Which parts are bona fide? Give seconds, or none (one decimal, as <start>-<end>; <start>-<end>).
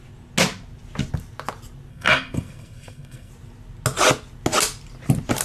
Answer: 0.0-1.9; 3.3-5.4